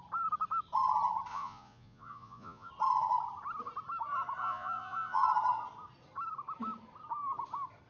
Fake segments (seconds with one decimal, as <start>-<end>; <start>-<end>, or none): 1.3-2.7; 4.4-5.2